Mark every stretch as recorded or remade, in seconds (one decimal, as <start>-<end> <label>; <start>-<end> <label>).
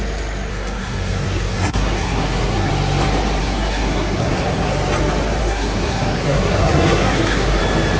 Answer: 0.0-0.5 recorded; 0.5-2.7 remade; 2.7-3.4 recorded; 3.4-4.7 remade; 4.7-5.4 recorded; 5.4-7.6 remade; 7.6-8.0 recorded